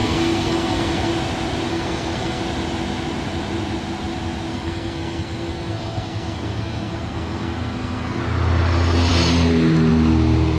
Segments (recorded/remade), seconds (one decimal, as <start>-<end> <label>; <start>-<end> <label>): 0.0-1.1 remade; 1.1-1.7 recorded; 1.7-2.4 remade; 2.4-4.5 recorded; 4.5-8.2 remade; 8.2-10.6 recorded